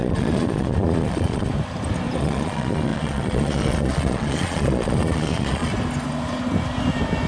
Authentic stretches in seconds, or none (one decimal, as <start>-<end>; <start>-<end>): 1.5-2.2; 5.7-7.3